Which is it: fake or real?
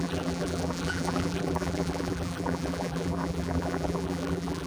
fake